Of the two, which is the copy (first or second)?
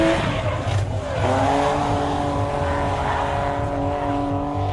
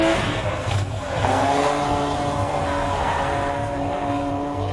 second